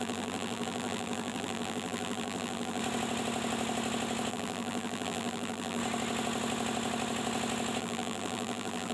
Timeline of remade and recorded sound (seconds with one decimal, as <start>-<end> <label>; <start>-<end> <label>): 0.0-2.8 remade; 2.8-4.3 recorded; 4.3-5.8 remade; 5.8-7.8 recorded; 7.8-8.9 remade